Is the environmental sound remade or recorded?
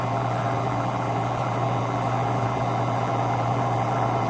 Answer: remade